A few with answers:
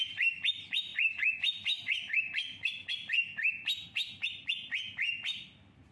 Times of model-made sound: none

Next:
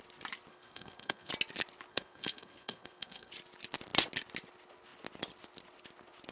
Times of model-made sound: 0.5-1.3 (codec, SNAC); 1.9-3.3

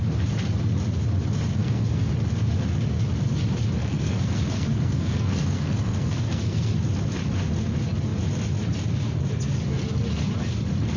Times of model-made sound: 1.6-2.1 (codec, SNAC); 3.8-6.7

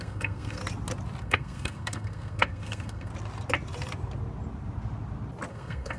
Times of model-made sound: 0.0-0.6 (codec, SNAC); 1.2-3.1; 5.5-6.0